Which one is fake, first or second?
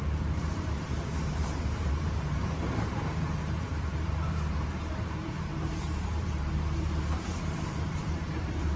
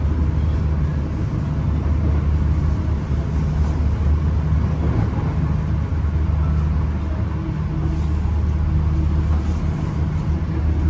first